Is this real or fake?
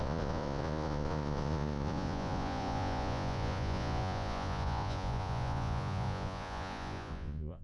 fake